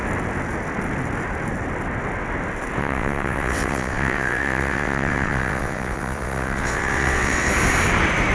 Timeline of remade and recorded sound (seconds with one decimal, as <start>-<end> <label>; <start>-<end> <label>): 0.0-2.8 recorded; 2.8-7.5 remade; 7.5-8.3 recorded